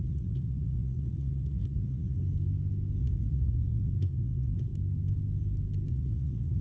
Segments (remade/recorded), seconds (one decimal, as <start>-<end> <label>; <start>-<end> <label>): 0.0-2.2 remade; 2.2-3.0 recorded; 3.0-4.7 remade; 4.7-5.9 recorded; 5.9-6.6 remade